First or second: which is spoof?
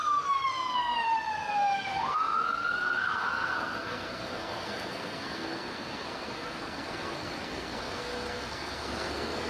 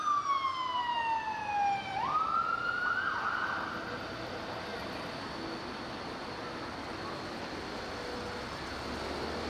first